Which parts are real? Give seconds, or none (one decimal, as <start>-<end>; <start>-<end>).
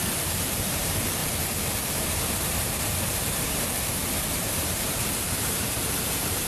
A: 1.2-1.9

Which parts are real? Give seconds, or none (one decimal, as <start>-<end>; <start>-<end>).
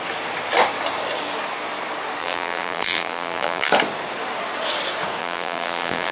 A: 0.0-2.2; 3.7-5.2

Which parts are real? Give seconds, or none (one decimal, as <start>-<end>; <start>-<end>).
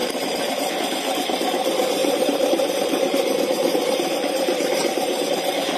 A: 0.7-2.0; 5.3-5.8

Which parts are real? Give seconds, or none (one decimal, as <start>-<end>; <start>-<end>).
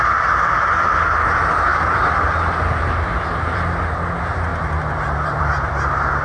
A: 0.0-1.7; 3.9-4.5; 5.7-6.2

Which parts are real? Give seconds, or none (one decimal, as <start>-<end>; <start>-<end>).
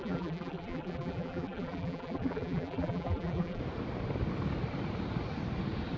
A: 3.6-6.0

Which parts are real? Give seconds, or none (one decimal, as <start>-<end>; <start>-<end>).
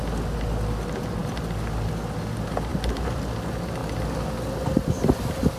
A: 0.0-2.7; 3.2-5.6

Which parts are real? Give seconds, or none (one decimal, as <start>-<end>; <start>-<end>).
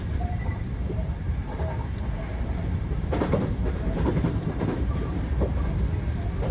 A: 0.0-0.5; 1.6-2.3; 5.6-6.5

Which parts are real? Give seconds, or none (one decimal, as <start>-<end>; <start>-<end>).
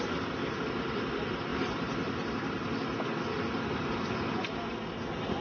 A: 0.0-5.4